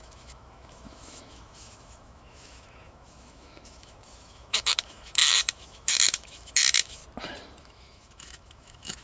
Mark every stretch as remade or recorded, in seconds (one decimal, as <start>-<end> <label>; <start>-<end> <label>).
0.0-7.0 remade; 7.0-7.6 recorded; 7.6-9.0 remade